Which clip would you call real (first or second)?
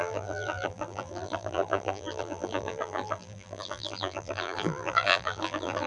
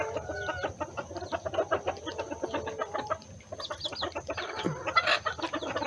second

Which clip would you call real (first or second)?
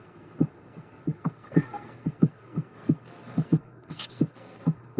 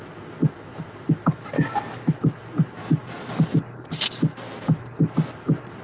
second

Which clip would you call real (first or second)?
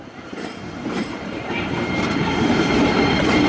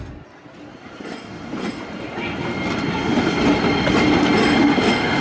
second